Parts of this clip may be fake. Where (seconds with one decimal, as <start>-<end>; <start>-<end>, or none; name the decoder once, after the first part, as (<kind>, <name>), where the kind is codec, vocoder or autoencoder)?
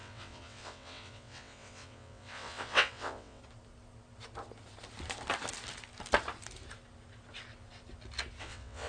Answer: 0.0-3.4 (vocoder, WaveNeXt); 8.4-8.9